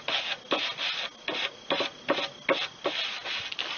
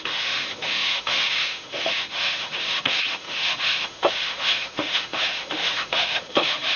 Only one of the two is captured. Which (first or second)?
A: first